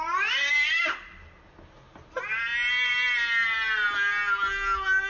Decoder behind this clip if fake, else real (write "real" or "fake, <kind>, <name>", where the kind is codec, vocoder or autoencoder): real